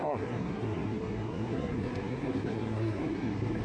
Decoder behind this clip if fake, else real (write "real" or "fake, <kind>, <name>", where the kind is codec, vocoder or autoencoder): fake, codec, SNAC